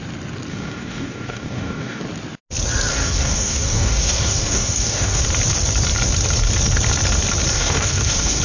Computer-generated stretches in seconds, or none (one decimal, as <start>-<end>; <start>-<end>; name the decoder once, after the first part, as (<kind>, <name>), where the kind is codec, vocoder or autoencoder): 0.5-2.0 (codec, DAC); 2.9-5.2; 7.5-8.4